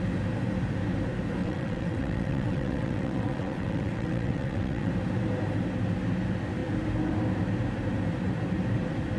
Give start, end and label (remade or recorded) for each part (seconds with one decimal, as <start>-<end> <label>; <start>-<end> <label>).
0.0-1.4 recorded; 1.4-4.9 remade; 4.9-9.2 recorded